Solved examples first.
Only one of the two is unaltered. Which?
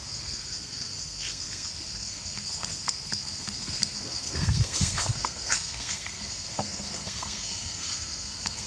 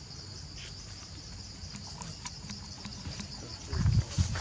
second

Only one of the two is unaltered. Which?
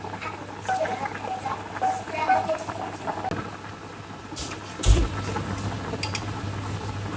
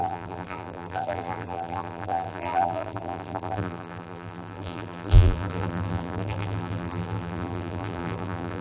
first